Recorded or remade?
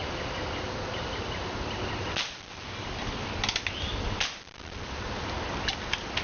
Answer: recorded